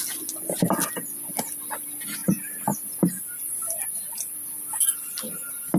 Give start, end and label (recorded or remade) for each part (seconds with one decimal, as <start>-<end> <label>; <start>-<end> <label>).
0.0-5.8 recorded